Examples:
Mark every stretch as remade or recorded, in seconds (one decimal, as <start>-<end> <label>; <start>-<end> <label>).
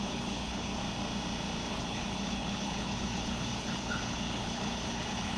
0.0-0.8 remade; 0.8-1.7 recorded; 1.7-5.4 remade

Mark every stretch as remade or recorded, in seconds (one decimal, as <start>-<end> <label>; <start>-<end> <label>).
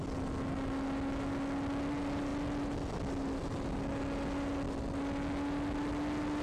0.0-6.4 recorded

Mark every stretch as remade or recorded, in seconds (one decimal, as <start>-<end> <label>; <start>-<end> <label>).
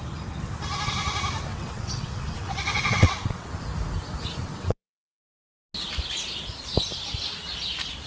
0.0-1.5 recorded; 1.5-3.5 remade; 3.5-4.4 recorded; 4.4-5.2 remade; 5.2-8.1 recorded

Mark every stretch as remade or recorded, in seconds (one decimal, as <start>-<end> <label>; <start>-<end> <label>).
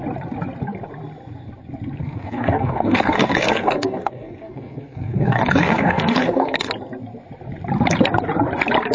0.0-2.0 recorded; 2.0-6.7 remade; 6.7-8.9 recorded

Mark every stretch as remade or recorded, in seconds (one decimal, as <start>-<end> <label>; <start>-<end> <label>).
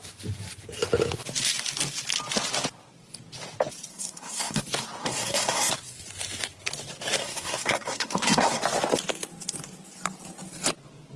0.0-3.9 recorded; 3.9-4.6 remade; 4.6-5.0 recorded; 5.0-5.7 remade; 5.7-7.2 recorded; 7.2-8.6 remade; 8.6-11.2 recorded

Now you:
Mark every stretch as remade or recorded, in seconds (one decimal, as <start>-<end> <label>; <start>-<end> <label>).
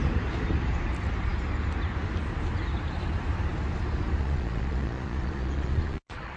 0.0-4.2 recorded; 4.2-6.4 remade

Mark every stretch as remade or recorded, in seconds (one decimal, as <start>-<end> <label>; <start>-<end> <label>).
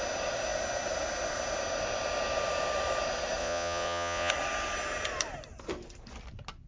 0.0-3.4 recorded; 3.4-4.3 remade; 4.3-6.7 recorded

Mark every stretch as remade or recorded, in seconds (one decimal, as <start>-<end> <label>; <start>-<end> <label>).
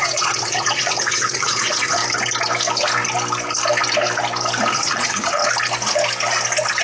0.0-2.0 remade; 2.0-4.7 recorded; 4.7-5.4 remade; 5.4-6.8 recorded